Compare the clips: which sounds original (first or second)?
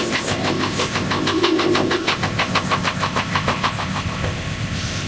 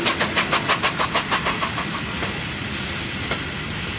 second